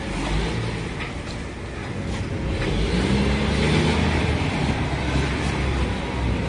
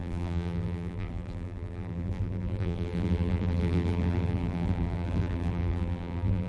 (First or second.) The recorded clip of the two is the first